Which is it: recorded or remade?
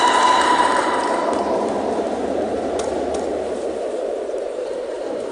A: remade